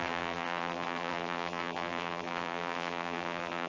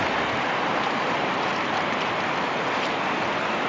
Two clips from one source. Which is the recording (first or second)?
second